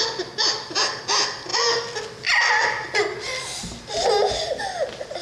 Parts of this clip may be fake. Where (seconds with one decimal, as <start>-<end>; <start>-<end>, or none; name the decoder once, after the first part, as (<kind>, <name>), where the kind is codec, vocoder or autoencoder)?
none